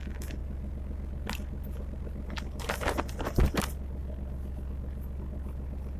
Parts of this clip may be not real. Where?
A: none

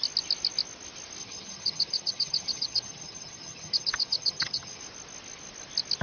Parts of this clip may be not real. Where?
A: 1.2-4.8 (vocoder, HiFi-GAN)

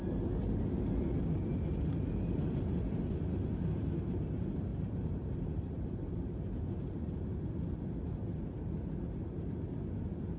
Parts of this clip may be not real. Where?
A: 4.7-6.4 (vocoder, BigVGAN v2)

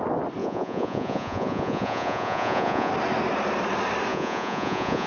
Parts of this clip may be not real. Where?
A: 0.4-2.9 (vocoder, Vocos); 4.1-5.1